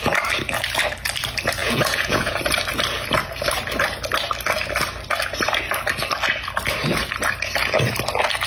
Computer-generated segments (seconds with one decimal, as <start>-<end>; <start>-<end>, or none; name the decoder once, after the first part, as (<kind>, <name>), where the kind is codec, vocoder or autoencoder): 1.6-2.4 (vocoder, Vocos)